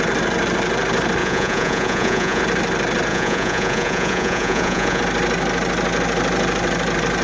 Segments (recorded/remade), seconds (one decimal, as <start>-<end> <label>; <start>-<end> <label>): 0.0-1.2 recorded; 1.2-2.4 remade; 2.4-3.1 recorded; 3.1-5.0 remade; 5.0-7.2 recorded